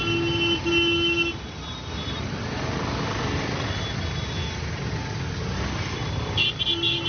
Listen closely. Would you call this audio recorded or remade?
recorded